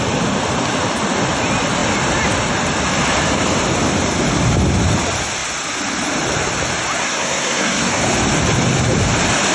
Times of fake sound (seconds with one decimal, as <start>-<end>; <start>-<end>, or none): 7.0-8.0